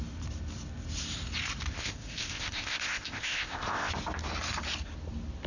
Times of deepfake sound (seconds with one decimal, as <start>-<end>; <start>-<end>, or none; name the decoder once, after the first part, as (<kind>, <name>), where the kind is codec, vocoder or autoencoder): 1.7-3.9 (codec, ZipCodec)